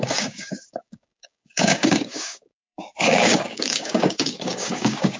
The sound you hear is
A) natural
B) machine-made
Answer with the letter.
B